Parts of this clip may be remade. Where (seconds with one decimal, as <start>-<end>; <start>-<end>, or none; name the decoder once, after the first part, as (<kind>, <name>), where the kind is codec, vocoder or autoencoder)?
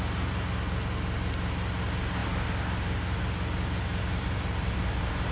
3.9-4.8 (vocoder, BigVGAN v2)